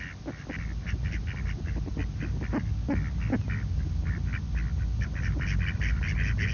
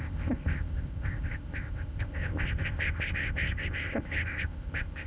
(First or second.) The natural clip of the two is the first